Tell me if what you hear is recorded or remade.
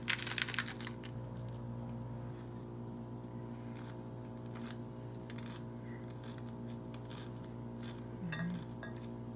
recorded